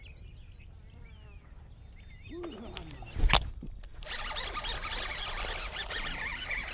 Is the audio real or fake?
real